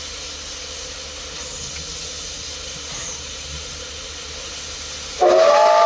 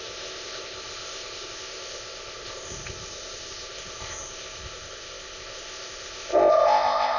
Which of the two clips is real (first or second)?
first